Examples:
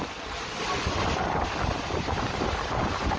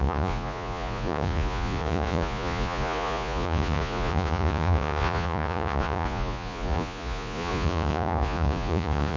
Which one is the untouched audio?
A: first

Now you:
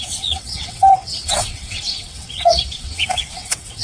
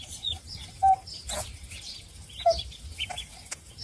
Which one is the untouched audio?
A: second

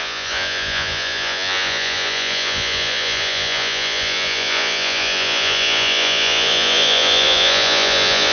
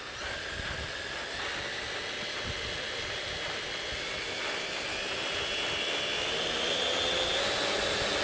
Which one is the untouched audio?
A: second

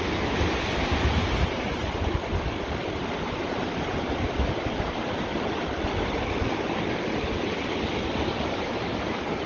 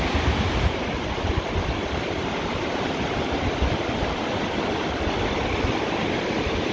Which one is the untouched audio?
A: first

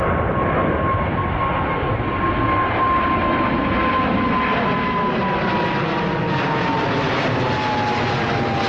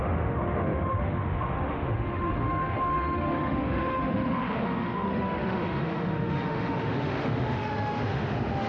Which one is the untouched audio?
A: first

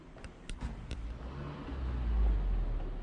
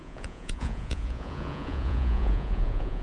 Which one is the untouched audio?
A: first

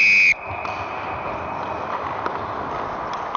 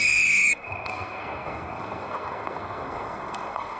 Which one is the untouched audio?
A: first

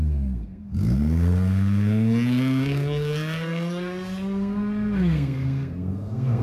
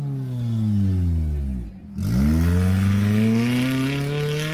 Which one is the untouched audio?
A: second